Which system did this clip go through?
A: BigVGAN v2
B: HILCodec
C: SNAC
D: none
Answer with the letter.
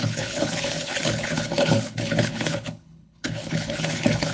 B